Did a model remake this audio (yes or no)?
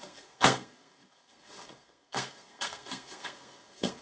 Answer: yes